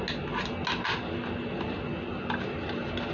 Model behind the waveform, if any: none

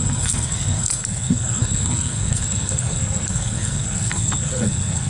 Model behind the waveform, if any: codec, SNAC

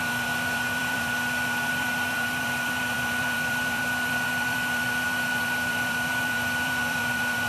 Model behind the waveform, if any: vocoder, BigVGAN v2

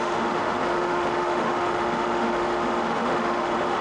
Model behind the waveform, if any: autoencoder, DAC-VAE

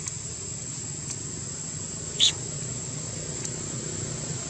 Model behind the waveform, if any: none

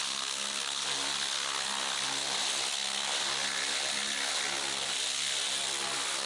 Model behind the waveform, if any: none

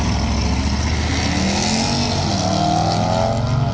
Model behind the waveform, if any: none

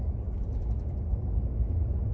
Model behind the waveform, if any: none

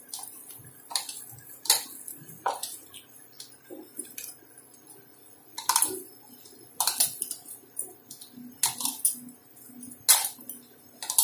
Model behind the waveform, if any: none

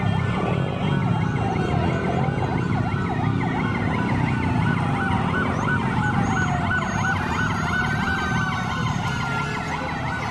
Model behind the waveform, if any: none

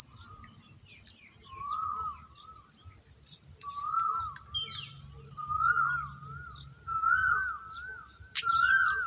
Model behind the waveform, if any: none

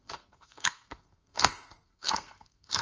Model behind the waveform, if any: codec, SNAC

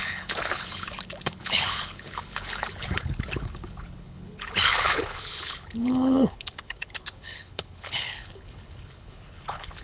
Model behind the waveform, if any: codec, HILCodec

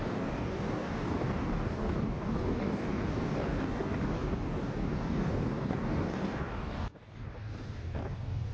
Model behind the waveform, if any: codec, DAC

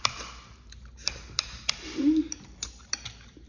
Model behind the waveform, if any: vocoder, BigVGAN v2